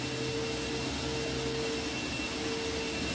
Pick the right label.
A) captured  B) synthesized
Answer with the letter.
A